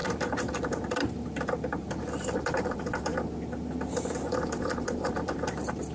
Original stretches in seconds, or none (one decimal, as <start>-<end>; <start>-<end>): 3.1-3.9